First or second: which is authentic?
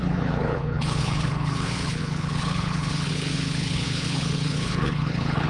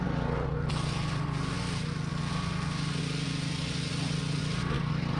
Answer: second